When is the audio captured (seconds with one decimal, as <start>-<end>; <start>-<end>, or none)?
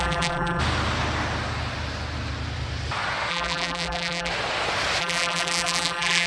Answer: 0.6-3.3; 4.3-5.0